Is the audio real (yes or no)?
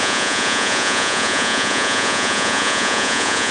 no